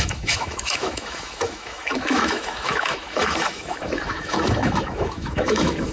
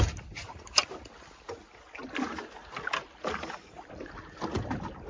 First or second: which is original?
second